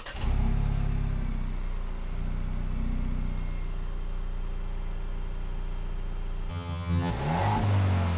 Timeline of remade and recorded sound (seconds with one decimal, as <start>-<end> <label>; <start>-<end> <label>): 0.0-6.5 recorded; 6.5-7.1 remade; 7.1-8.2 recorded